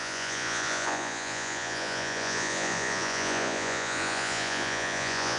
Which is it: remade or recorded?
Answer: remade